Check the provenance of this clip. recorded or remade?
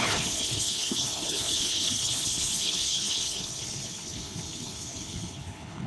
remade